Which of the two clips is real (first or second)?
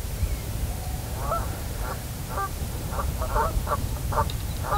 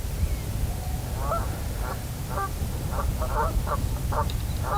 second